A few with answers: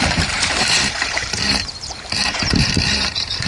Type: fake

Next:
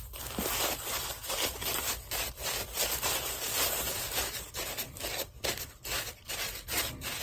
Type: fake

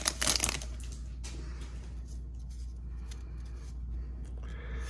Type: real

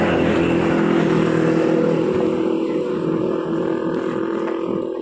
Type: real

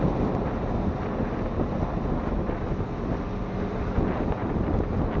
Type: real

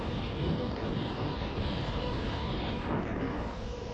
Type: fake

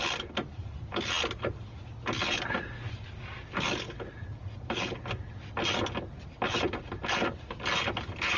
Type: real